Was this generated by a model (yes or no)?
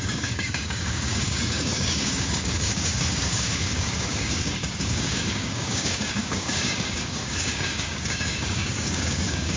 yes